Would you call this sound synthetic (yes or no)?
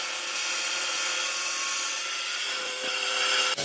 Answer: yes